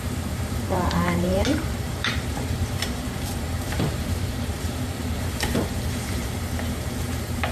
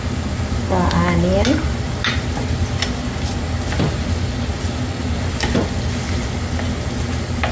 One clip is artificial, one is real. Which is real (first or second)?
second